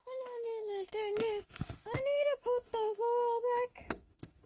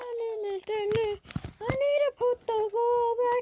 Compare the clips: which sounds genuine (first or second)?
second